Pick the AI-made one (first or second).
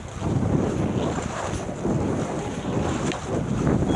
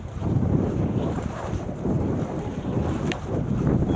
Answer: second